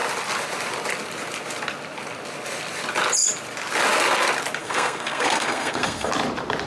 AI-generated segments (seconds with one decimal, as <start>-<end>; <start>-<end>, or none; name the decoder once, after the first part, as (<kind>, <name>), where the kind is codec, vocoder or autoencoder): 4.6-6.1 (codec, SNAC)